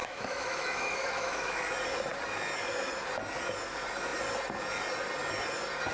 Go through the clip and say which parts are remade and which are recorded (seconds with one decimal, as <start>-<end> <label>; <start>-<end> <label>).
0.0-1.6 remade; 1.6-5.9 recorded